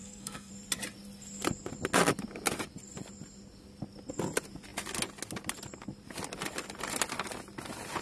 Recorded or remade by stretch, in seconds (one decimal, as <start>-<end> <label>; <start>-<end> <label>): 0.0-0.5 remade; 0.5-8.0 recorded